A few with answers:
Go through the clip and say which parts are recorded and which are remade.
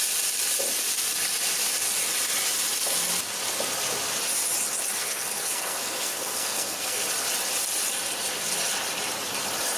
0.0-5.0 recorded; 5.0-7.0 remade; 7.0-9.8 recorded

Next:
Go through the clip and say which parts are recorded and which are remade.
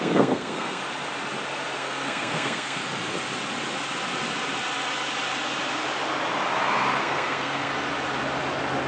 0.0-0.8 remade; 0.8-1.8 recorded; 1.8-2.8 remade; 2.8-7.0 recorded; 7.0-7.7 remade; 7.7-8.9 recorded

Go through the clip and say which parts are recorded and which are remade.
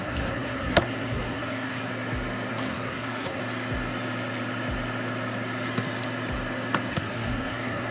0.0-1.9 remade; 1.9-2.5 recorded; 2.5-3.4 remade; 3.4-6.9 recorded; 6.9-7.9 remade